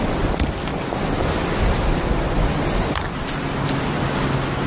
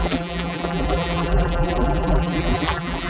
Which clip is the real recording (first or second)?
first